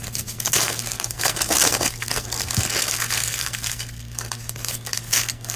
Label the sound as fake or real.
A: fake